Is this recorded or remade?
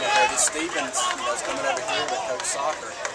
recorded